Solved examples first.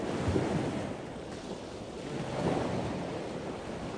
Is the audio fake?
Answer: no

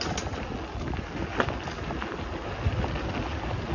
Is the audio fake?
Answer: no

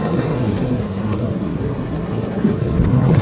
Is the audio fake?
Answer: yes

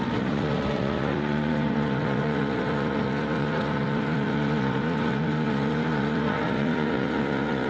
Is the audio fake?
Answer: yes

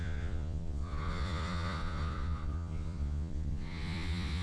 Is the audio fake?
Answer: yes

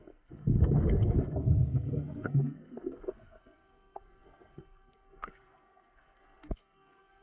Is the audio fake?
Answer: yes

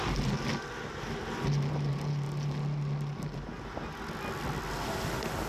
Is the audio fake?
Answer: no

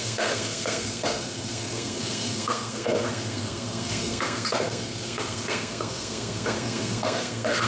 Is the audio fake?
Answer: yes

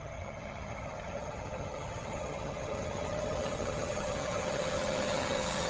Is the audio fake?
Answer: yes